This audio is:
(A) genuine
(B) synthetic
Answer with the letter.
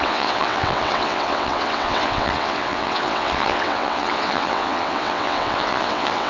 B